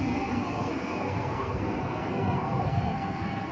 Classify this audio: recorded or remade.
remade